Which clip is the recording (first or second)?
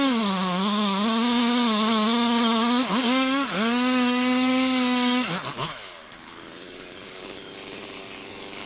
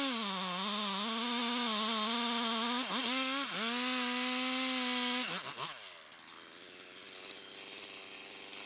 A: second